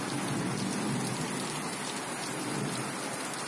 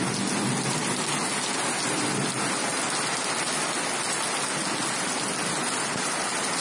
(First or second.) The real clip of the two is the second